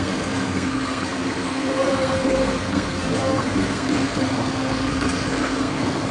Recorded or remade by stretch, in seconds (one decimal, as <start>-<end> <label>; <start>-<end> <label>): 0.0-6.1 remade